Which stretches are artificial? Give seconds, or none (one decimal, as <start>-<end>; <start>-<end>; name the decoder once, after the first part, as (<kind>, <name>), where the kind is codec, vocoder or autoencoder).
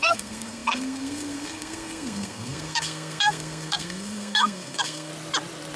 0.0-5.1 (codec, SNAC)